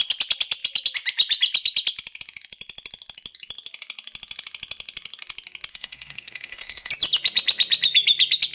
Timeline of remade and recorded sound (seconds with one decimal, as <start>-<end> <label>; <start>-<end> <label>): 0.0-5.7 recorded; 5.7-6.9 remade; 6.9-8.5 recorded